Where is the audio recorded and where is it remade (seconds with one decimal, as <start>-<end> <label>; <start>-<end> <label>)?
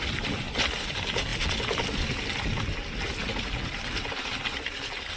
0.0-5.2 recorded